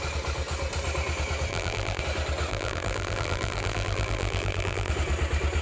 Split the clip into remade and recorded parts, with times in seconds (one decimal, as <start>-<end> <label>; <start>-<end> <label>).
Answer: 0.0-1.5 recorded; 1.5-2.0 remade; 2.0-2.5 recorded; 2.5-4.9 remade; 4.9-5.6 recorded